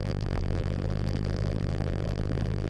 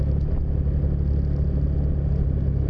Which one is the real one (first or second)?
second